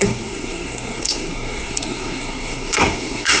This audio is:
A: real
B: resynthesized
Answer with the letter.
B